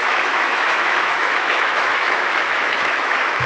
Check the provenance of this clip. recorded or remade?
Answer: remade